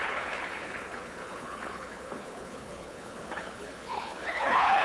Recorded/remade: remade